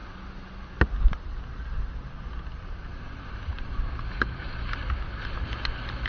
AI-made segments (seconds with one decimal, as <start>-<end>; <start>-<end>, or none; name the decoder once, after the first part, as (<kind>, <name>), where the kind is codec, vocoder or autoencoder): 2.9-4.7 (vocoder, BigVGAN v2)